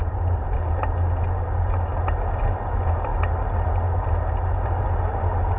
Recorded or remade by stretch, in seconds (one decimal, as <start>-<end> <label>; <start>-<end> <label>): 0.0-5.6 recorded